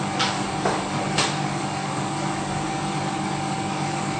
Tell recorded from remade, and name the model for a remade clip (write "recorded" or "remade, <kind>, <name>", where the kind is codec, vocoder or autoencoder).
remade, codec, DAC